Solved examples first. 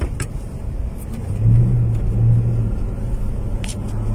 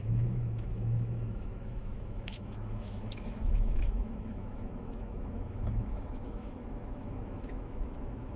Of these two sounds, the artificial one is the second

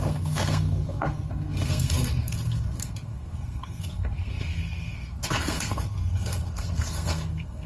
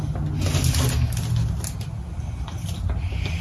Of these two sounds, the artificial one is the first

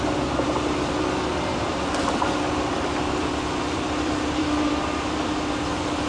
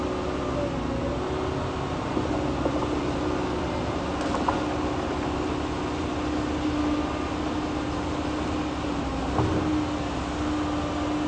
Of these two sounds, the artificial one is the first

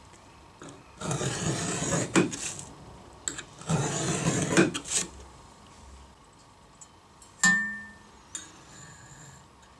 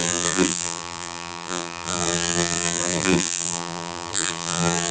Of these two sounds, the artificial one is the second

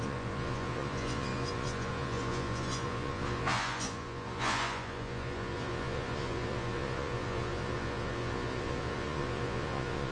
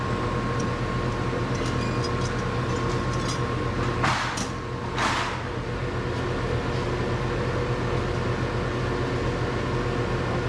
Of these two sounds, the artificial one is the first